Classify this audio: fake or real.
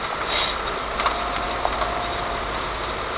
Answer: fake